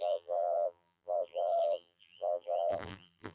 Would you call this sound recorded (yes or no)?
no